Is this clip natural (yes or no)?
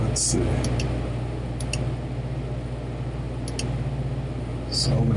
yes